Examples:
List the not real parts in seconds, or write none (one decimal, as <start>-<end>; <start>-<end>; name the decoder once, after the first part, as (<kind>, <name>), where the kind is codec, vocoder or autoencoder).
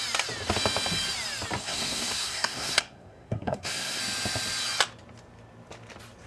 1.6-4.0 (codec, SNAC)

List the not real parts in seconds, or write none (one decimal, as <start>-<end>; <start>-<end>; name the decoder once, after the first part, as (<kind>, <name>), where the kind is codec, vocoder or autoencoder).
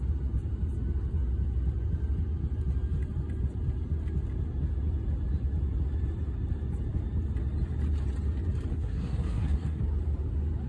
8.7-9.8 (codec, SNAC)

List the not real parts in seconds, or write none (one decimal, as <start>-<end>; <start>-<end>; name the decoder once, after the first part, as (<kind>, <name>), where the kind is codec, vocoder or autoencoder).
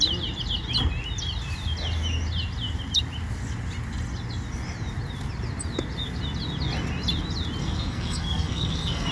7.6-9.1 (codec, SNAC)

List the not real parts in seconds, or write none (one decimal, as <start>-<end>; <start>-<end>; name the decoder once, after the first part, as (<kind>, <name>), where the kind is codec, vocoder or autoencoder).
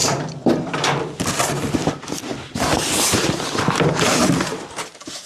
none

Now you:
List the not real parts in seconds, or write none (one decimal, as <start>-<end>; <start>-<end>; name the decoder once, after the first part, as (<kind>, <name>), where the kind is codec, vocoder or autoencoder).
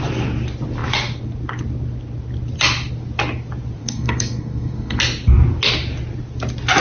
3.8-5.0 (codec, SNAC)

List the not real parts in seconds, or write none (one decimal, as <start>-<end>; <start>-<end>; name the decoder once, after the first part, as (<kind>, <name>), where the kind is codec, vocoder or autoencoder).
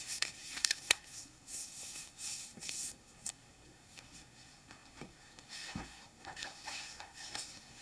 0.0-7.8 (codec, SNAC)